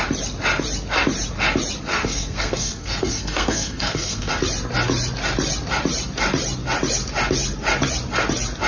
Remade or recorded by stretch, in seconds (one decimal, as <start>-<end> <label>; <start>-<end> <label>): 0.0-1.9 recorded; 1.9-4.3 remade; 4.3-8.7 recorded